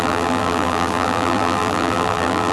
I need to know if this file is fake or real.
fake